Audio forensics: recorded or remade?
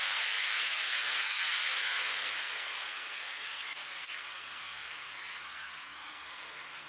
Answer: remade